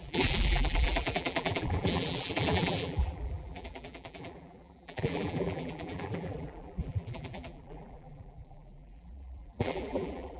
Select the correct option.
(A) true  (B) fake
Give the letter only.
B